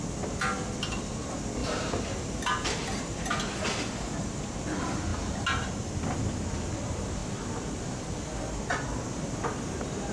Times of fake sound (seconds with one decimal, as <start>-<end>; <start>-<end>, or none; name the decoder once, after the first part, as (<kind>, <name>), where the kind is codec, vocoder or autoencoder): 1.6-3.1 (vocoder, BigVGAN v2); 5.1-5.7